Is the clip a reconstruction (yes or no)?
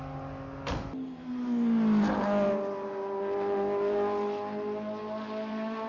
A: no